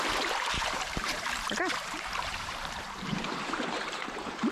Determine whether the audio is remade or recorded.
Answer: remade